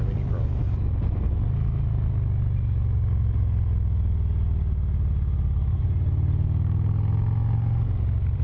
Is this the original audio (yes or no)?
yes